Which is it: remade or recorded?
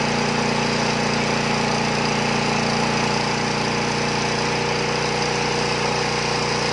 recorded